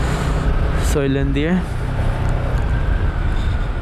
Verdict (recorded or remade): recorded